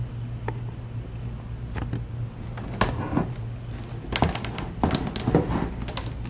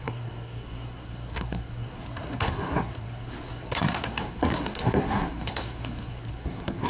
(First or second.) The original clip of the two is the first